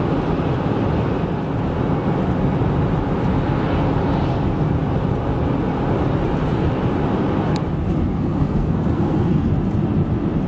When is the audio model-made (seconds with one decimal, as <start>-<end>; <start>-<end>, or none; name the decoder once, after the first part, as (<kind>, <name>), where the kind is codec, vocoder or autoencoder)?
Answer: 8.1-9.5 (codec, SNAC)